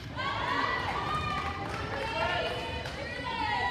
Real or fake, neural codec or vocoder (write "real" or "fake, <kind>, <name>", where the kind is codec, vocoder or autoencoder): fake, vocoder, BigVGAN v2